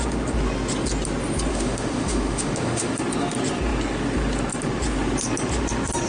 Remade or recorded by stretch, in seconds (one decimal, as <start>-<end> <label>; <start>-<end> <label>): 0.0-1.5 recorded; 1.5-3.0 remade; 3.0-6.1 recorded